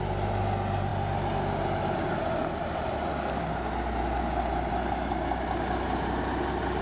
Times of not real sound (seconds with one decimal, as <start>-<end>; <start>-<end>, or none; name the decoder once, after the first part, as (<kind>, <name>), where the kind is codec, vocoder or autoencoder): none

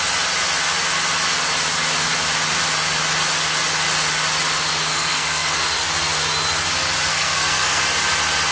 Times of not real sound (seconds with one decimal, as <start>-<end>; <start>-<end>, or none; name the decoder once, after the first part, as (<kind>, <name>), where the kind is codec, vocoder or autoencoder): 4.9-5.5 (codec, SNAC); 7.1-7.8

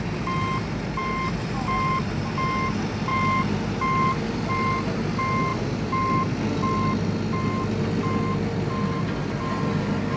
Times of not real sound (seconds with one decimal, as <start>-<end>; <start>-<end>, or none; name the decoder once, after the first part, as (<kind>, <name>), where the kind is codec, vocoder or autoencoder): 1.0-2.0 (vocoder, BigVGAN v2); 3.1-4.5; 5.5-8.4

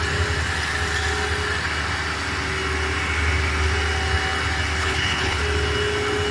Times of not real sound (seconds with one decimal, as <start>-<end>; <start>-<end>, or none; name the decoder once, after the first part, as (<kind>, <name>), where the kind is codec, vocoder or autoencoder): 4.8-5.4 (codec, HILCodec)